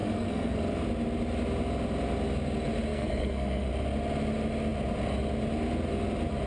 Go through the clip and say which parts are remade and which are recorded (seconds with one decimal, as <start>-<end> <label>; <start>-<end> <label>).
0.0-0.6 remade; 0.6-2.9 recorded; 2.9-3.7 remade; 3.7-6.5 recorded